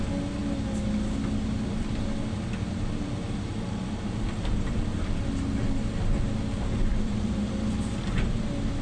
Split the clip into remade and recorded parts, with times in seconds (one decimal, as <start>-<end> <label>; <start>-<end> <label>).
0.0-6.9 recorded; 6.9-7.5 remade; 7.5-8.8 recorded